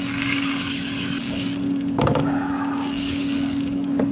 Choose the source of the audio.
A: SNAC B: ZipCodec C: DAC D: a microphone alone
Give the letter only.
C